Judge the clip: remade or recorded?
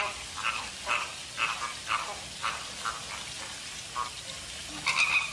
recorded